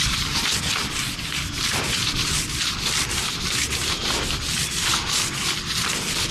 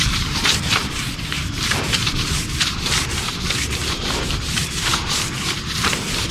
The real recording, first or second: first